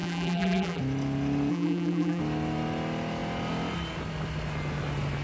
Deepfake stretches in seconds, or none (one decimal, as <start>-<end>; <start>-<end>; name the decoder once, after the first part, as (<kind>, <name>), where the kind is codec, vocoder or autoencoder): 0.0-0.8 (vocoder, BigVGAN v2); 1.5-2.2